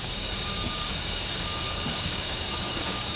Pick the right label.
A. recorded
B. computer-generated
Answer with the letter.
B